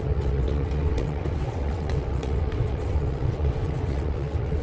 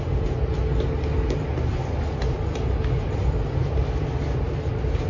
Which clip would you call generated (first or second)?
first